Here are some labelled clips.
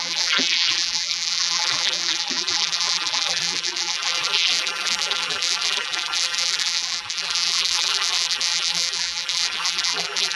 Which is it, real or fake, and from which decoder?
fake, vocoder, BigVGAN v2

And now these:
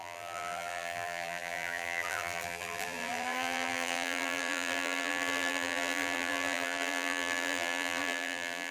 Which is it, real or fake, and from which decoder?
fake, vocoder, BigVGAN v2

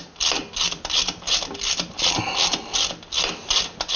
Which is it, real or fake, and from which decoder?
real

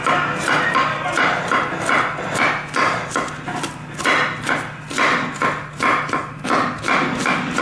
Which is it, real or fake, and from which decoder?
real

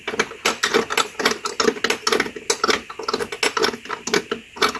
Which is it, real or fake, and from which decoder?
real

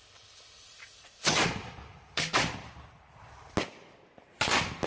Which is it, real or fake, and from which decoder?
real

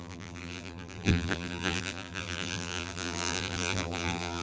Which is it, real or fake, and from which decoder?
fake, vocoder, BigVGAN v2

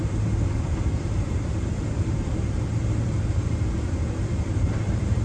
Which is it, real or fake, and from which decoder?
fake, vocoder, BigVGAN v2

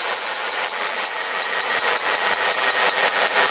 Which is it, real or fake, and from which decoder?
fake, vocoder, BigVGAN v2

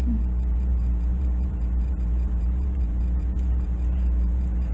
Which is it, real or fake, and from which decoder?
fake, vocoder, BigVGAN v2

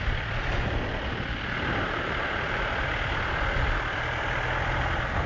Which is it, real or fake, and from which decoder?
fake, vocoder, BigVGAN v2